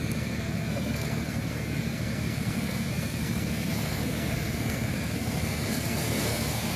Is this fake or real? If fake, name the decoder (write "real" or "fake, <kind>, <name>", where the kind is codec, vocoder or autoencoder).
fake, codec, SNAC